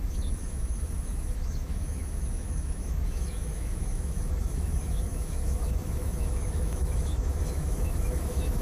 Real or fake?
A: fake